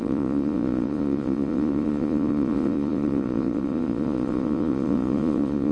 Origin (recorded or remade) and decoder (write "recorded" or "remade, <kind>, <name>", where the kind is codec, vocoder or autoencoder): remade, vocoder, Vocos